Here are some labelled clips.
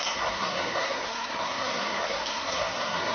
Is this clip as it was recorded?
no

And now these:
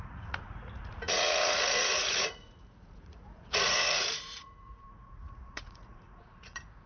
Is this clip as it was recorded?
no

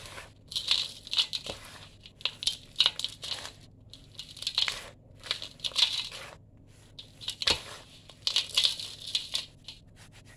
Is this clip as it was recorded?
yes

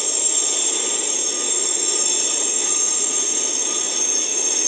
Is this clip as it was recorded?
yes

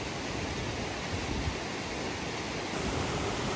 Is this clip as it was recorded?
yes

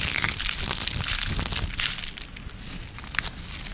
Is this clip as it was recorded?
yes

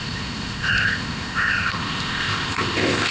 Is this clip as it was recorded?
no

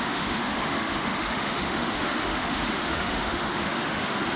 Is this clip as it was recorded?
no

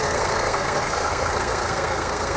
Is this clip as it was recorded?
no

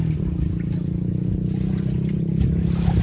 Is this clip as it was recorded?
yes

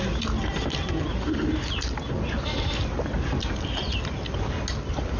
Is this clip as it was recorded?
yes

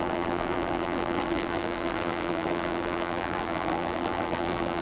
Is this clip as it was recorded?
no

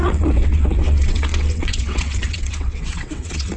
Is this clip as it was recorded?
no